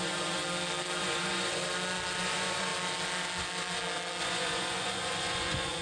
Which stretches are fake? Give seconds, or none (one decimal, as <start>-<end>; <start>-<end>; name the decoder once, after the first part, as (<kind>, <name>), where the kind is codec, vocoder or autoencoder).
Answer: 0.0-0.4 (vocoder, Vocos); 1.0-1.6; 2.2-2.7; 4.2-5.8